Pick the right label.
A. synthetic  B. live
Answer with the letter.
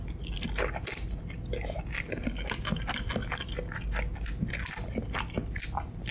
B